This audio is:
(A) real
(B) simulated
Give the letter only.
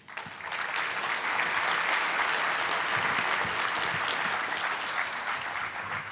A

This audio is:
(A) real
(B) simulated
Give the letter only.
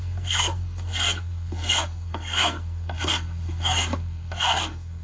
B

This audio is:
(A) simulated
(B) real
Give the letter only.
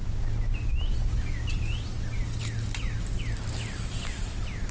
B